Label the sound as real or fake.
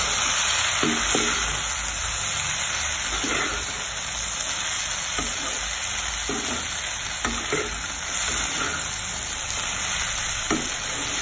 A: real